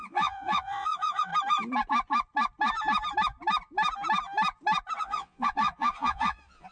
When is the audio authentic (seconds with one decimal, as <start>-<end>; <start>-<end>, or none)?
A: 1.3-5.0